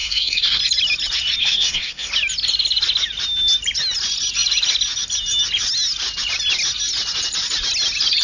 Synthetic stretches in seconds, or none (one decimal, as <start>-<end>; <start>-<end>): 0.0-0.6; 1.4-2.1